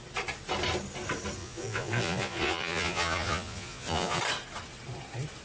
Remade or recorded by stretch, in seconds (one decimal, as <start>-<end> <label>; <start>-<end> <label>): 0.0-1.4 recorded; 1.4-4.2 remade; 4.2-5.4 recorded